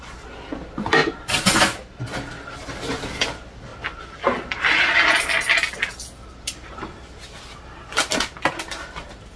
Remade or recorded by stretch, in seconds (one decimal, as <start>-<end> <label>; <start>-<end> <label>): 0.0-9.4 recorded